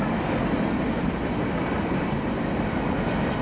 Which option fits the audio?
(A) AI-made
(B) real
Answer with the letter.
B